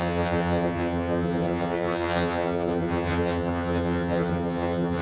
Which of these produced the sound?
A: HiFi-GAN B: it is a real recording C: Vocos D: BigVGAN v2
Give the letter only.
A